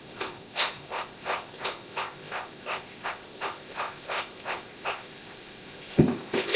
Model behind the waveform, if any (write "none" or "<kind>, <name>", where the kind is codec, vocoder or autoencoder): codec, ZipCodec